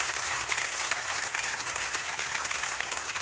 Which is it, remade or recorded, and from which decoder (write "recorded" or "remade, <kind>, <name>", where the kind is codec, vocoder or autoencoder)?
remade, codec, SNAC